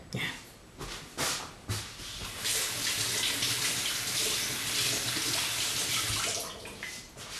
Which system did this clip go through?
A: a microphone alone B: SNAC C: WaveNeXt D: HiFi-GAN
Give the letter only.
A